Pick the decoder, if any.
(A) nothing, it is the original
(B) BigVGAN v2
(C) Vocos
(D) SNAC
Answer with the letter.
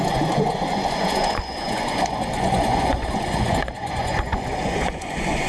C